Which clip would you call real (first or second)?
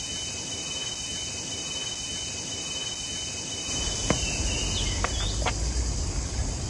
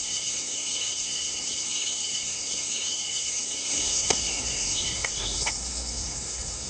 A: first